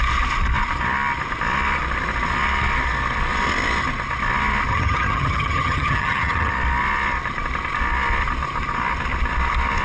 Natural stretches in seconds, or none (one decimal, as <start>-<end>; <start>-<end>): 0.0-4.7; 6.5-9.8